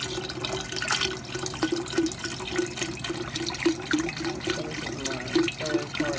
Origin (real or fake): real